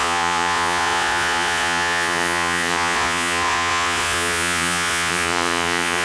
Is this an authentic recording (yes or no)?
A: no